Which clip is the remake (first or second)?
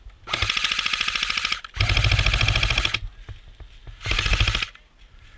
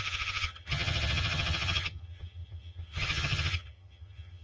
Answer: second